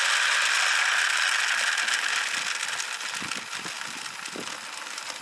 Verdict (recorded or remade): recorded